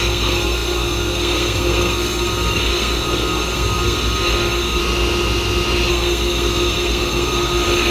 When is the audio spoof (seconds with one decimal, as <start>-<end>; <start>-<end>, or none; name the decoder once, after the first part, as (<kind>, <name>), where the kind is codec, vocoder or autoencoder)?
0.0-4.8 (codec, SNAC); 5.9-7.9